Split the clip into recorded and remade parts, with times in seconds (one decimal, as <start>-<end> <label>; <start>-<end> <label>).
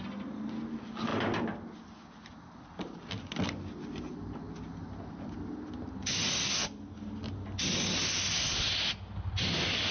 0.0-9.9 recorded